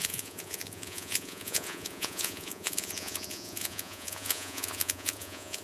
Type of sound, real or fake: fake